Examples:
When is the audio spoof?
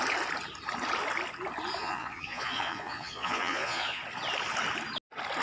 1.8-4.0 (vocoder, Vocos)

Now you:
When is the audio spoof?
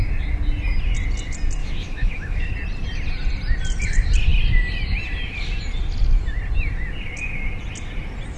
1.6-2.5 (autoencoder, DAC-VAE)